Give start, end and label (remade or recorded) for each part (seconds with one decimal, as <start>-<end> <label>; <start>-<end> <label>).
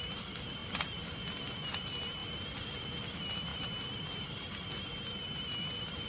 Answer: 0.0-6.1 recorded